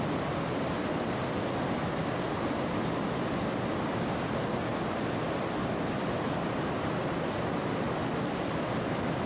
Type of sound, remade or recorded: recorded